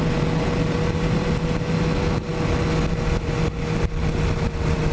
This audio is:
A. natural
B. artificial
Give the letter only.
A